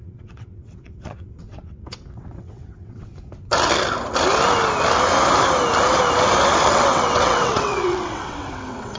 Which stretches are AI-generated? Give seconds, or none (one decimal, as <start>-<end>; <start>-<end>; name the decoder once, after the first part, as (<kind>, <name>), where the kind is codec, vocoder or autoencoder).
0.0-3.1 (vocoder, WaveNeXt); 6.7-9.0